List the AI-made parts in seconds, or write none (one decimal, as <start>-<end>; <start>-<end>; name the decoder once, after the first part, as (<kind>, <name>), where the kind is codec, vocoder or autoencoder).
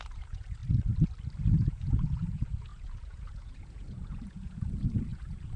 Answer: 0.0-0.6 (vocoder, Vocos); 1.4-5.6